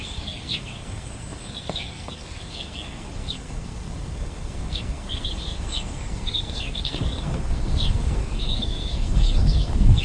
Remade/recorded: remade